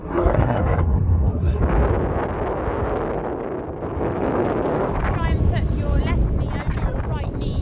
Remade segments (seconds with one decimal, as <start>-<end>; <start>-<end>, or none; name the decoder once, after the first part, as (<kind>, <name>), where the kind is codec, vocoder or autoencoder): 0.0-1.6 (codec, SNAC)